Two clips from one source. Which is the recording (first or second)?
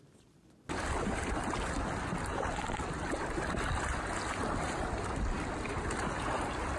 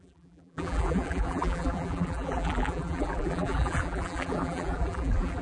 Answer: first